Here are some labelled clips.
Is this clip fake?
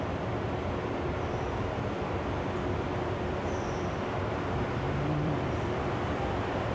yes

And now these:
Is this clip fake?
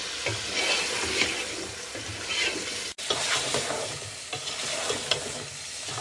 no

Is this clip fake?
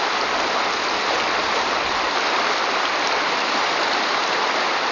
yes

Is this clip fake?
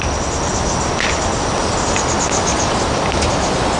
no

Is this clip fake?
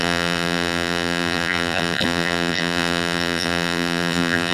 yes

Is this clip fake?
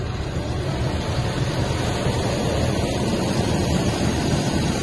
yes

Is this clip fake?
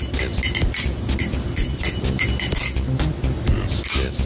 no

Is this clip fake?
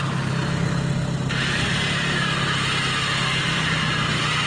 no